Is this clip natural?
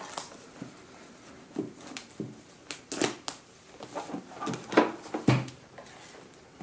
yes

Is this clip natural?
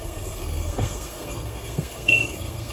no